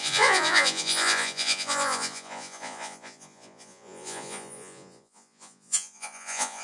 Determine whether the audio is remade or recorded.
remade